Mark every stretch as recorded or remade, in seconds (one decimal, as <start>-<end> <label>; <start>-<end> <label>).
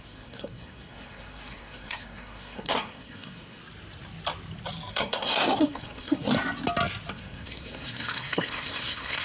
0.0-3.6 remade; 3.6-4.9 recorded; 4.9-6.3 remade; 6.3-7.1 recorded; 7.1-9.2 remade